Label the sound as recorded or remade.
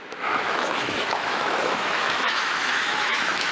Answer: remade